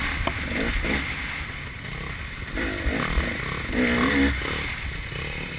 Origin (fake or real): real